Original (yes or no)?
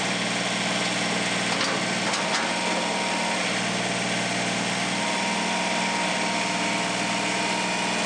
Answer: yes